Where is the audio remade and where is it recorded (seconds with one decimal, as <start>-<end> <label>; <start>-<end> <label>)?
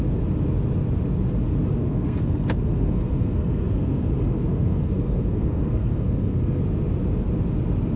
0.0-1.8 recorded; 1.8-6.6 remade; 6.6-8.0 recorded